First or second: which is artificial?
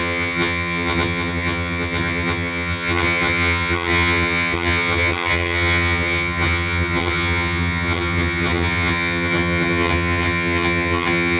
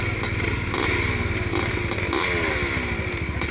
first